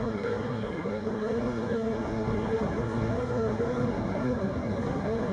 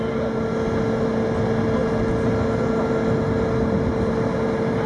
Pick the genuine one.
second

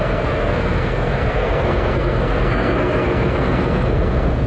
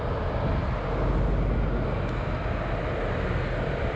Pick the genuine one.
second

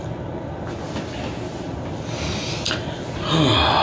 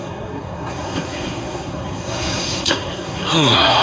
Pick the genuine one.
first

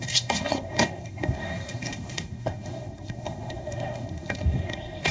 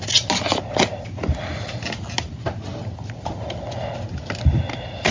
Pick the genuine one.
second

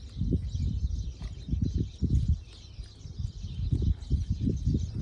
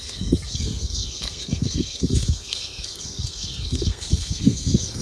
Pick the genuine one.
first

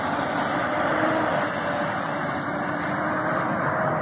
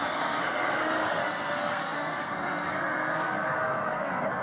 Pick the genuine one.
first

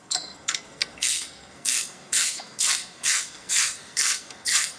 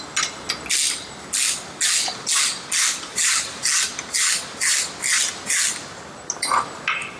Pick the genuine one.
second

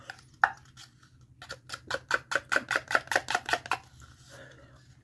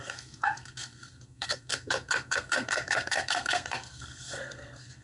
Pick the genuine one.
first